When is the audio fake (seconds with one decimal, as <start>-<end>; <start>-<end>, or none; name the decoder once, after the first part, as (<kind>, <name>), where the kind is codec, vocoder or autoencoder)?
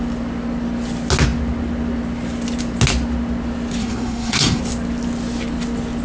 3.8-4.6 (codec, SNAC)